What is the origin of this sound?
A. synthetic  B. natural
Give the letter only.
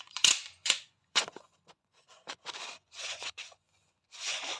A